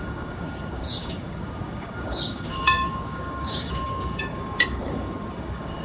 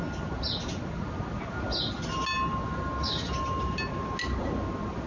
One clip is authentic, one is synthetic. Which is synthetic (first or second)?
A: first